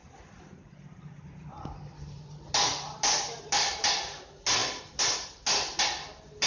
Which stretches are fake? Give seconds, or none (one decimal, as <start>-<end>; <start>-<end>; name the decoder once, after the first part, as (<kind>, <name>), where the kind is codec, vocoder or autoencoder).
0.0-3.9 (vocoder, BigVGAN v2); 4.6-5.1